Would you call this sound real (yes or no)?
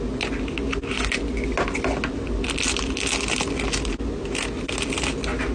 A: yes